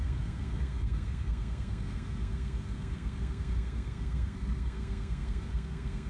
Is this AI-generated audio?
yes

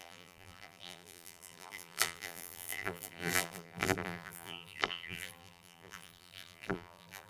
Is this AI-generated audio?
yes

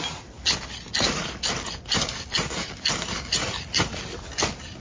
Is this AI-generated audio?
no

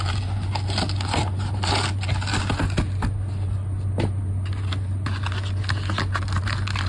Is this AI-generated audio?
no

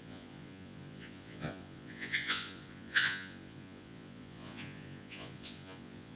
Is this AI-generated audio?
yes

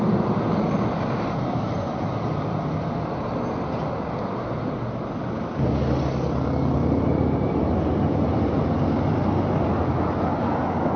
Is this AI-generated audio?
no